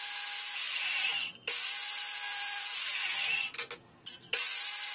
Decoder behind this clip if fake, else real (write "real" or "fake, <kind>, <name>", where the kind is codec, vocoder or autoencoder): real